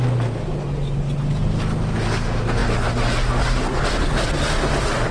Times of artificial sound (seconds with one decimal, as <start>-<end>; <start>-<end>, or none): none